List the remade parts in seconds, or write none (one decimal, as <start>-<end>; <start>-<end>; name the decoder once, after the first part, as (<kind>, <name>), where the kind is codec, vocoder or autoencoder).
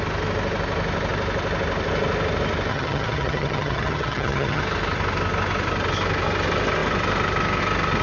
2.7-4.6 (vocoder, HiFi-GAN)